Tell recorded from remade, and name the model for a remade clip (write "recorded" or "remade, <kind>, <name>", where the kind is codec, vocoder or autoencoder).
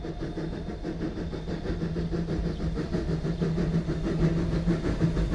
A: recorded